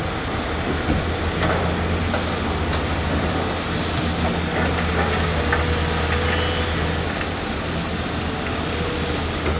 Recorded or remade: recorded